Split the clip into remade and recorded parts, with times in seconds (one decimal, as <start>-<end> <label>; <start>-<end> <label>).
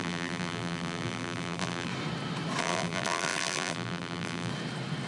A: 0.0-1.9 remade; 1.9-2.6 recorded; 2.6-4.5 remade; 4.5-5.1 recorded